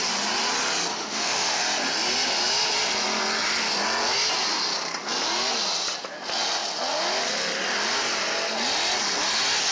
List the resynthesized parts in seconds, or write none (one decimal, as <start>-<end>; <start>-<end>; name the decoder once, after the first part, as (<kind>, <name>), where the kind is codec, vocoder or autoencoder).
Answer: 0.9-1.6 (autoencoder, DAC-VAE)